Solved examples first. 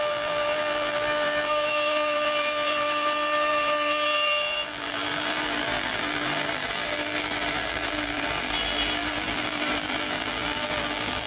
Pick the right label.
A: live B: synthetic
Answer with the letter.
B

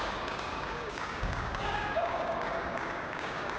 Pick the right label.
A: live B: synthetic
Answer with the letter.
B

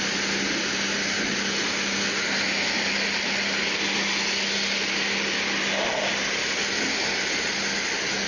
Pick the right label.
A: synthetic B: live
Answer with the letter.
B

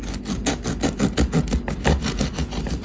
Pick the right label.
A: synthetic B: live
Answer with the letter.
B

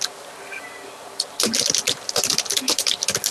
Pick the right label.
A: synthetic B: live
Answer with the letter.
B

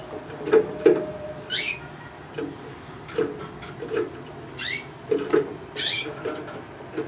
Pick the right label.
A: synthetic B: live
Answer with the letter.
B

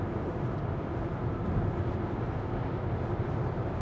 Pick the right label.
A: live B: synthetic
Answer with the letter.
A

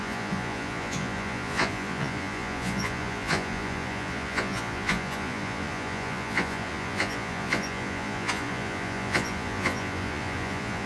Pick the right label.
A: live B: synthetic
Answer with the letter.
B